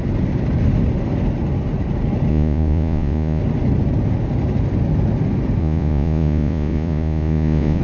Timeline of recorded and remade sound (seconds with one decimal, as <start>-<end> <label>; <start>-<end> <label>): 0.0-2.3 recorded; 2.3-3.4 remade; 3.4-5.6 recorded; 5.6-7.8 remade